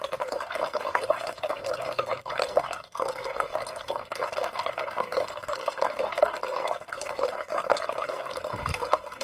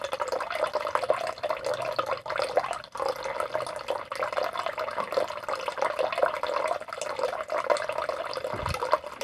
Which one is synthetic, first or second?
first